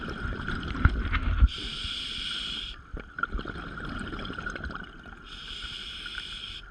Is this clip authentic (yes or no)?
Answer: yes